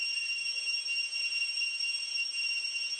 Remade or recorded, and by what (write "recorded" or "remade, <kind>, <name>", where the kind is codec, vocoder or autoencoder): recorded